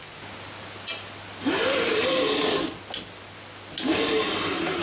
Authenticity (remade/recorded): recorded